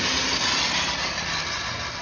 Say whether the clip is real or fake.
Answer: real